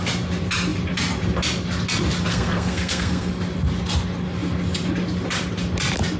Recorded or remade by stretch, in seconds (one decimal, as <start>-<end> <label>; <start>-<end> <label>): 0.0-2.3 recorded; 2.3-3.3 remade; 3.3-6.2 recorded